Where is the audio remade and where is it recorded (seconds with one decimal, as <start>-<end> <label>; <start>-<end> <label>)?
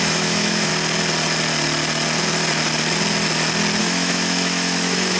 0.0-0.7 remade; 0.7-3.8 recorded; 3.8-5.2 remade